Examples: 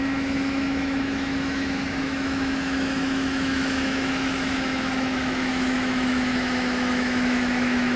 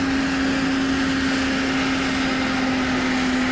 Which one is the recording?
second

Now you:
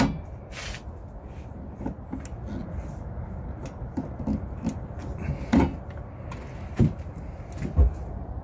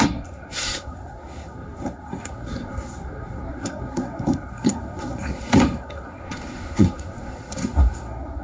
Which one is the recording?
first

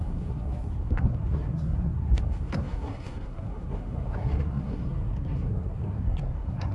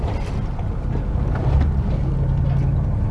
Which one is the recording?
second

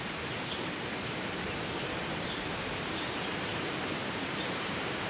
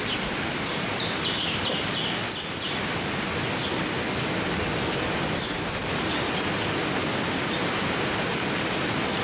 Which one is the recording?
second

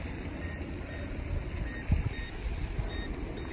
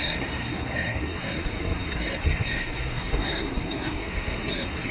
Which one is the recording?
first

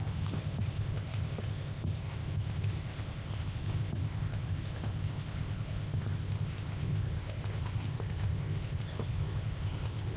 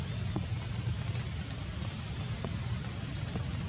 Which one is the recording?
second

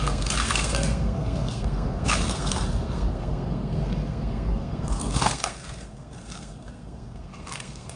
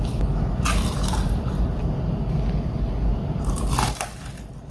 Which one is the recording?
second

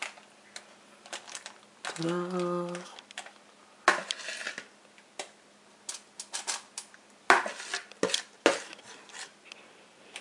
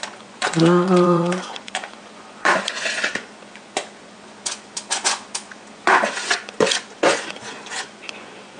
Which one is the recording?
first